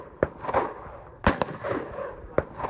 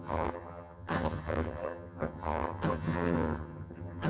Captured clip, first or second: first